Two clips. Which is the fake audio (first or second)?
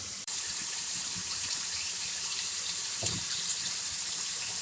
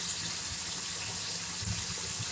first